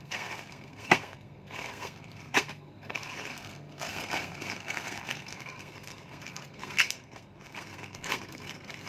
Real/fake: fake